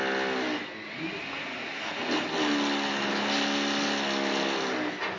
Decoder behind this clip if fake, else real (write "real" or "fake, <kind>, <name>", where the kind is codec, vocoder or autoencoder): real